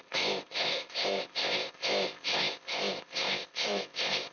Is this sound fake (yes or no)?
yes